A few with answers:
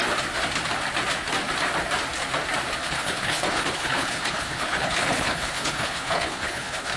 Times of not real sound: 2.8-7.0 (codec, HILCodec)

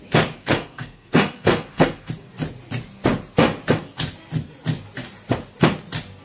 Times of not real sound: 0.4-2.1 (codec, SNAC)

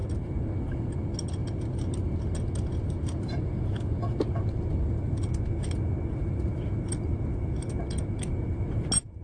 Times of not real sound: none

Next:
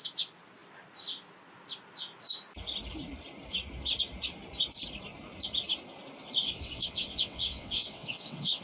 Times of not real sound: 6.4-8.6 (vocoder, WaveNeXt)

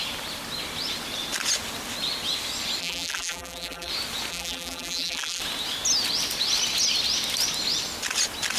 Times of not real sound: 2.8-3.9 (vocoder, BigVGAN v2); 4.3-5.4